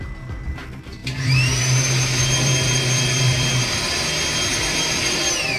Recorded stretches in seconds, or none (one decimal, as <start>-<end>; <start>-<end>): 0.0-1.0; 4.0-4.5